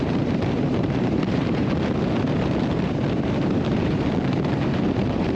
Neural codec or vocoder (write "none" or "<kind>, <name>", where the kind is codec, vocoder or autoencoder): vocoder, BigVGAN v2